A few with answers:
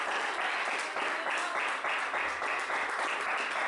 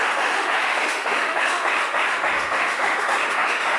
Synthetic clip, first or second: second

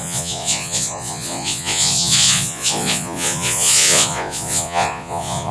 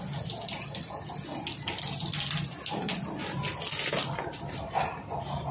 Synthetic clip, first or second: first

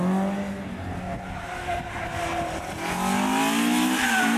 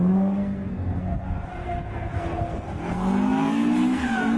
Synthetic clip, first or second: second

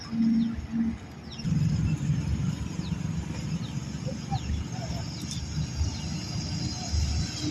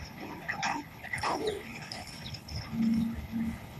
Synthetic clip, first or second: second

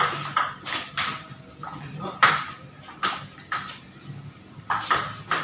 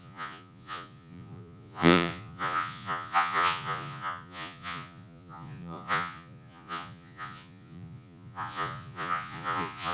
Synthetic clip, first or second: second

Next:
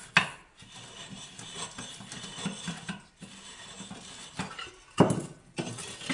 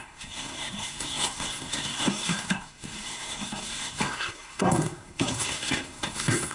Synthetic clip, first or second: second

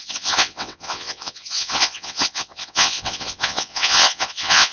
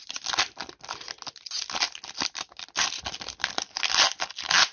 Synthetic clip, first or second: first